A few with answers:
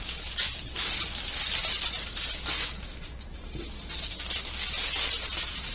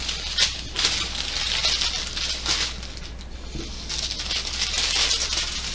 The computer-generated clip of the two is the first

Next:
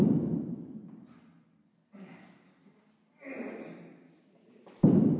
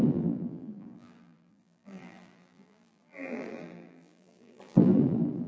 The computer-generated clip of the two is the second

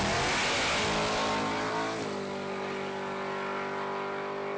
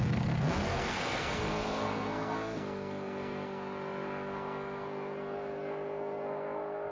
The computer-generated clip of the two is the second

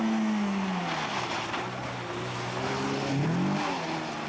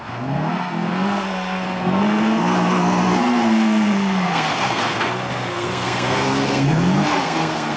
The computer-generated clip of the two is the second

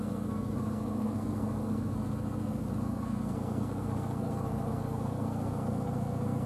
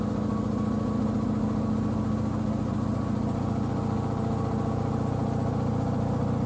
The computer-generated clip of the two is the first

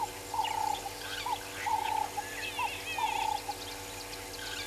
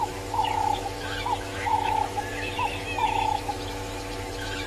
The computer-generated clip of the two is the second